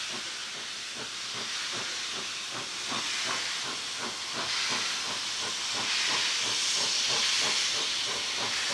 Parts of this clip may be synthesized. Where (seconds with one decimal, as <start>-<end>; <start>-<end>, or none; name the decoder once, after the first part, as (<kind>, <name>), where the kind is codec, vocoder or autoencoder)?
none